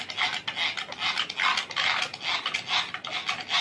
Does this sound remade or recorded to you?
recorded